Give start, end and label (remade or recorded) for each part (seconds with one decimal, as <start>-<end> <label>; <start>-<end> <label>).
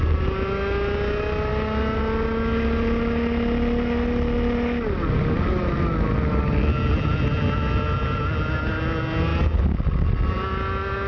0.0-11.1 recorded